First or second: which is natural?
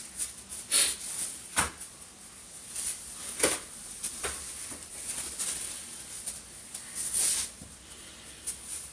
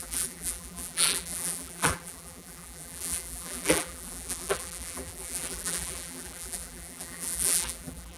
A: first